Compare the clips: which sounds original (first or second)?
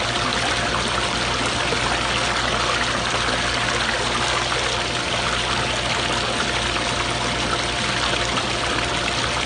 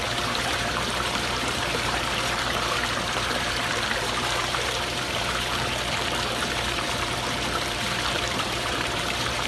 first